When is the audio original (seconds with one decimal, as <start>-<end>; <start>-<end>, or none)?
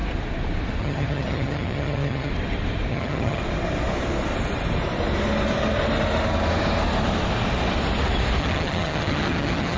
0.0-0.8; 2.3-2.9; 3.4-8.4